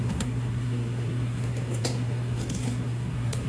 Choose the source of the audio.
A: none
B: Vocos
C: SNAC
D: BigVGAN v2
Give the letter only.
C